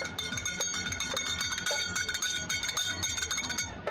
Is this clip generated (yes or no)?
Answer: no